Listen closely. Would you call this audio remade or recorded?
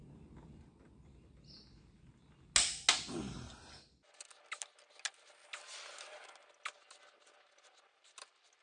recorded